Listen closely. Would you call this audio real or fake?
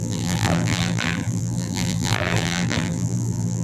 fake